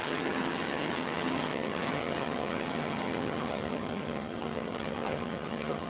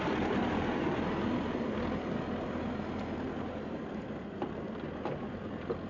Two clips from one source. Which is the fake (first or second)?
first